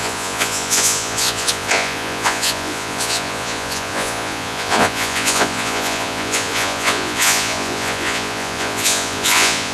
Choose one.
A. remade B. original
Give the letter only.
A